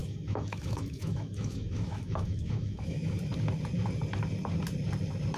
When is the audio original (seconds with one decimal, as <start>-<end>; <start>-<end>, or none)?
3.2-5.4